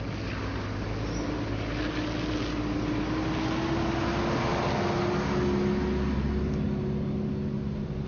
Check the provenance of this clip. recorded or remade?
recorded